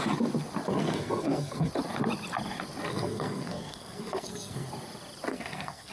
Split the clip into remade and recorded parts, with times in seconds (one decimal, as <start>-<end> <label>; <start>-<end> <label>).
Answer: 0.0-0.8 recorded; 0.8-1.7 remade; 1.7-2.9 recorded; 2.9-4.7 remade; 4.7-5.3 recorded; 5.3-5.9 remade